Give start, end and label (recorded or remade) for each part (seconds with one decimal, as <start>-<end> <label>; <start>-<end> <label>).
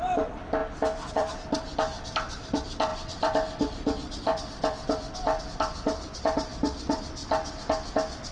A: 0.0-7.2 remade; 7.2-8.3 recorded